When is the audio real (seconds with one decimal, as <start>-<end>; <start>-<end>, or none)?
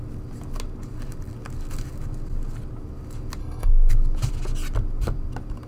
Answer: 0.0-3.4; 3.9-5.7